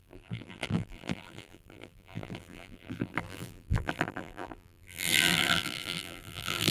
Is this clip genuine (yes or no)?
no